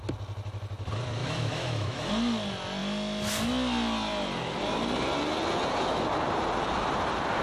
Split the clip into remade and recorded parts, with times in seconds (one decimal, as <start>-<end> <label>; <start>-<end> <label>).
0.0-1.2 recorded; 1.2-2.1 remade; 2.1-7.4 recorded